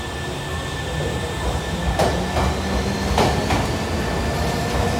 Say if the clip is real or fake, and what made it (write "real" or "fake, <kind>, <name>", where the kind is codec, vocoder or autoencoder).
real